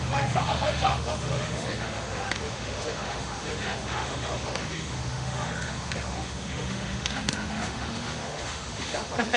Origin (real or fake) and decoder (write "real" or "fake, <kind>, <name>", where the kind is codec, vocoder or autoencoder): fake, autoencoder, DAC-VAE